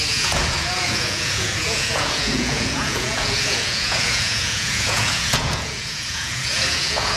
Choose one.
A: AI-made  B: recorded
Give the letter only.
A